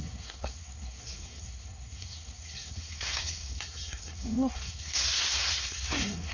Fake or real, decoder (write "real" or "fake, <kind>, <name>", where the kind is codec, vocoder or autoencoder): fake, codec, SNAC